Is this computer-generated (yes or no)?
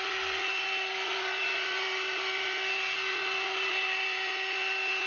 no